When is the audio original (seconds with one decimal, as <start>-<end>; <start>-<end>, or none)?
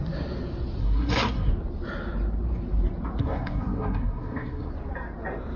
0.0-0.8; 1.5-3.2; 4.7-5.6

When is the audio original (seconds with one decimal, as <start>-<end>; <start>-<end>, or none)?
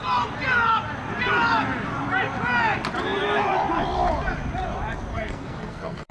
0.0-5.1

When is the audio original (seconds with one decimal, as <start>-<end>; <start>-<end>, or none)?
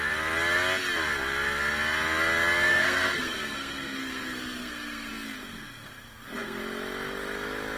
0.0-2.7; 5.1-5.5; 6.6-7.8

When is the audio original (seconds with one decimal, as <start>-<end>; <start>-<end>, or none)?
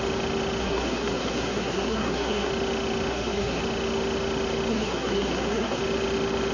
0.0-0.6; 2.5-3.1; 3.6-4.7; 5.8-6.5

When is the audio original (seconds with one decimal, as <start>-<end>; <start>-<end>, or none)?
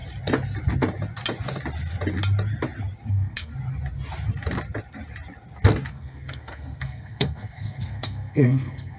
0.0-3.1; 3.5-5.9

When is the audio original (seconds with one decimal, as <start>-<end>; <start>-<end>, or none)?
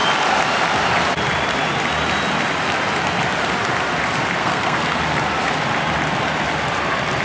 0.0-4.4; 5.0-7.2